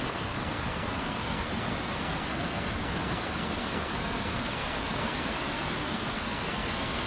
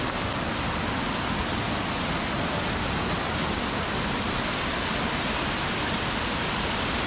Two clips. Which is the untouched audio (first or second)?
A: second